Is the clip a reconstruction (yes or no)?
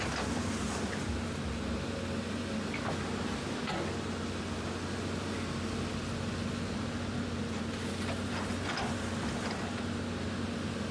no